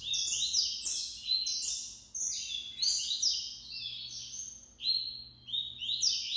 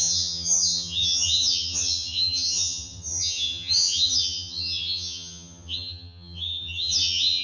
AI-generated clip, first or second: second